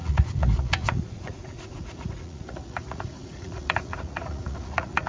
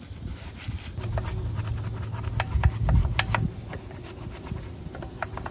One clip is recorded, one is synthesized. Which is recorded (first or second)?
second